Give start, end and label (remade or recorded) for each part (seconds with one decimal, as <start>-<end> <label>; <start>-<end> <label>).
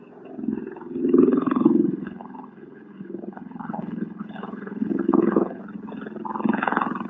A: 0.0-1.3 recorded; 1.3-5.6 remade; 5.6-7.1 recorded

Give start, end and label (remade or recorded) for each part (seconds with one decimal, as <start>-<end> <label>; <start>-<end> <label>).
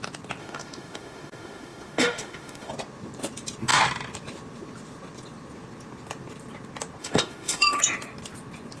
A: 0.0-0.4 recorded; 0.4-2.7 remade; 2.7-7.0 recorded; 7.0-7.8 remade; 7.8-8.8 recorded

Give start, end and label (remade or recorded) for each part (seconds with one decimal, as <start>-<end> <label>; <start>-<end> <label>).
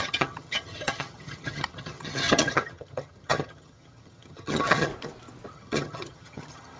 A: 0.0-4.9 remade; 4.9-5.5 recorded; 5.5-6.8 remade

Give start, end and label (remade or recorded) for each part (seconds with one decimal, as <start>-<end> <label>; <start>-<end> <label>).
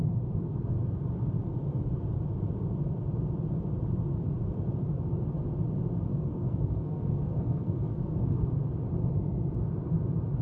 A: 0.0-6.1 recorded; 6.1-8.5 remade; 8.5-10.4 recorded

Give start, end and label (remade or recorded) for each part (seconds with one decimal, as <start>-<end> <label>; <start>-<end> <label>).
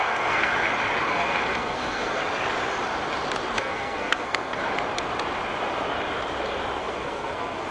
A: 0.0-0.5 remade; 0.5-1.1 recorded; 1.1-2.2 remade; 2.2-3.6 recorded; 3.6-4.6 remade; 4.6-6.8 recorded; 6.8-7.7 remade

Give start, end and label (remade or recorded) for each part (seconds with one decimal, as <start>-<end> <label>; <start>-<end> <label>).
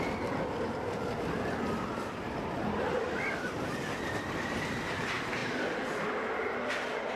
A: 0.0-7.2 recorded